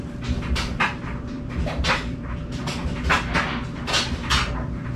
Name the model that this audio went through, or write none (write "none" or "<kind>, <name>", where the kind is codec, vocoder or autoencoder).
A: none